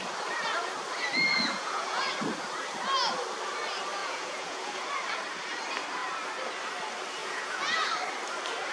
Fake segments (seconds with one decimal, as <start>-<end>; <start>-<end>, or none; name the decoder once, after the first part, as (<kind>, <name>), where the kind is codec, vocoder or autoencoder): 1.3-2.0 (vocoder, Vocos); 4.0-4.7; 7.2-7.9